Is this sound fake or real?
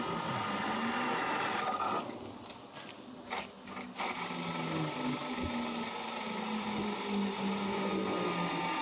real